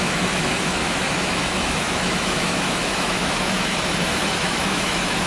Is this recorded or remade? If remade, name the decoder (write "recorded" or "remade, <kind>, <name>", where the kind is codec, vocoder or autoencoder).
remade, autoencoder, DAC-VAE